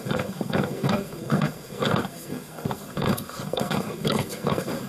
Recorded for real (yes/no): no